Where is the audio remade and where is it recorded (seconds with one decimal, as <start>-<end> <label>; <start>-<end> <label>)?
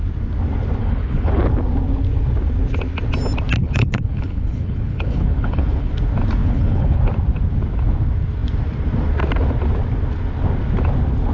0.0-0.8 recorded; 0.8-1.4 remade; 1.4-3.6 recorded; 3.6-5.9 remade; 5.9-6.4 recorded; 6.4-7.0 remade; 7.0-11.3 recorded